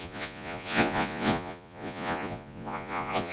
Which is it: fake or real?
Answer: fake